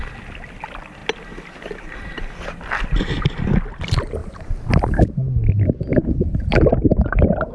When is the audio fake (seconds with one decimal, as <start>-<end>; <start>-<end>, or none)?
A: none